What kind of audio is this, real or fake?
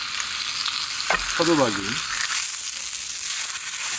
real